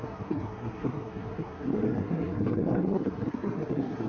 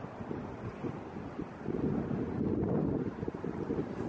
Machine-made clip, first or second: first